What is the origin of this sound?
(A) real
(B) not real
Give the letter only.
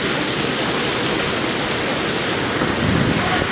A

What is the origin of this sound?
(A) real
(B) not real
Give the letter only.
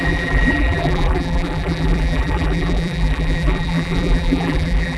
B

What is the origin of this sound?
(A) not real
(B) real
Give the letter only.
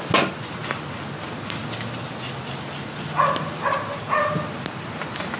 B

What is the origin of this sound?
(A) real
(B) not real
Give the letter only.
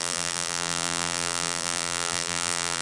B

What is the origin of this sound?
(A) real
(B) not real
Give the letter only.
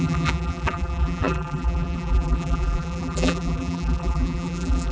B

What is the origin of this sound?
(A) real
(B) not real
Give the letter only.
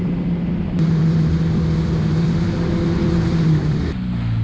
B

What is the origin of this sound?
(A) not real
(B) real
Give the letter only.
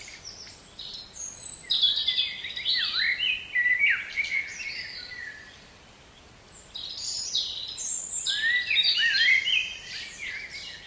A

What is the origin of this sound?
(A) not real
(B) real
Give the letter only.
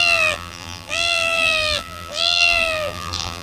A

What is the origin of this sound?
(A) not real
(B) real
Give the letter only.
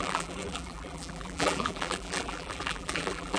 A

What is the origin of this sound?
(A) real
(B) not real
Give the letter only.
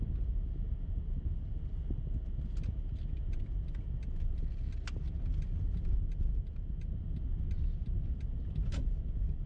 A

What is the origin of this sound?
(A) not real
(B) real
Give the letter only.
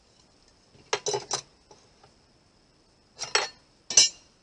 B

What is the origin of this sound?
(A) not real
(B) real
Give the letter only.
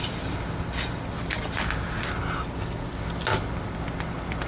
B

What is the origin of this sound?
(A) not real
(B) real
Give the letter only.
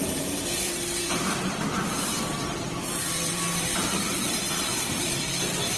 A